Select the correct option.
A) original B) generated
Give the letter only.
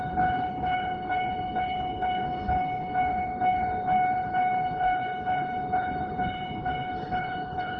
B